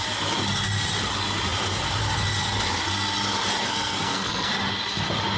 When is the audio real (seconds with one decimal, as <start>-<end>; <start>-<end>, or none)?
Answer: 0.0-3.6; 4.5-5.4